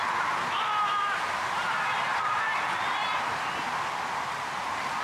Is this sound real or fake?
real